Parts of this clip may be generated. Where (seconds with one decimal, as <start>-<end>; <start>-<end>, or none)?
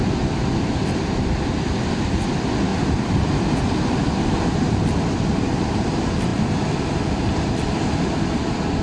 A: 2.7-3.6; 6.3-7.7